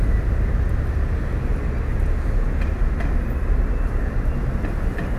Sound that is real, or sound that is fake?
real